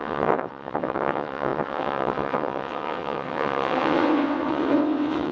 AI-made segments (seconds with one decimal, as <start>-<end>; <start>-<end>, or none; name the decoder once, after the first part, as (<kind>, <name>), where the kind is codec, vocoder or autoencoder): 0.0-5.3 (vocoder, WaveNeXt)